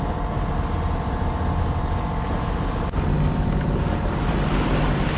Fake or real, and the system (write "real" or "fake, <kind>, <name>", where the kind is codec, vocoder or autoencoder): real